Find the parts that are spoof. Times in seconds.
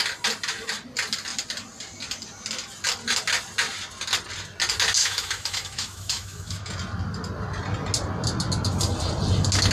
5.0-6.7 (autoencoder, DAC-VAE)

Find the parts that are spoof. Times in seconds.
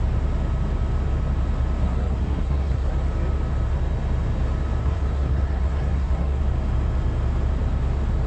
1.8-2.9 (codec, SNAC); 4.8-6.4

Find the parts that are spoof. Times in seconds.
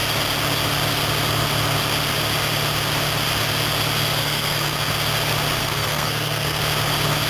4.2-4.9 (codec, SNAC); 5.6-6.6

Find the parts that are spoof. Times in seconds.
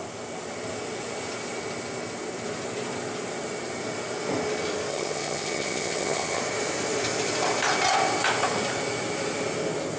4.9-6.4 (vocoder, HiFi-GAN)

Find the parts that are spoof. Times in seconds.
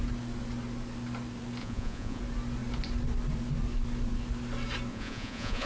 1.6-2.2 (vocoder, Vocos); 4.9-5.7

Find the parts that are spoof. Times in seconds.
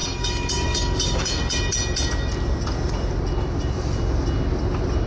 0.0-1.6 (codec, DAC)